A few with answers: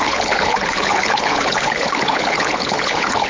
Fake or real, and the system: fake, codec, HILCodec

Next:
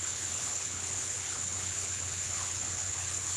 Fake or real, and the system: fake, codec, HILCodec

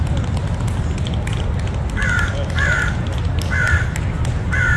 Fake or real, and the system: real